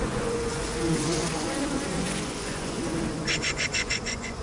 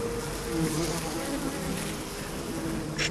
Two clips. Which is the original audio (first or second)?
second